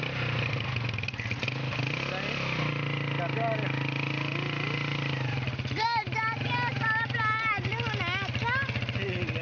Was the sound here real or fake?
real